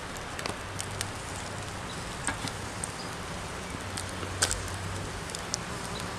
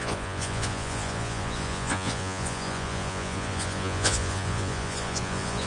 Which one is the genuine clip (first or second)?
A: first